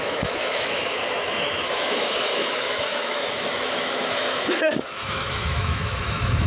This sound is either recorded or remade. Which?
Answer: remade